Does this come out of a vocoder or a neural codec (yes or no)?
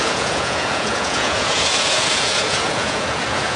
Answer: yes